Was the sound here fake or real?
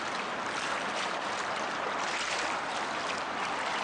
real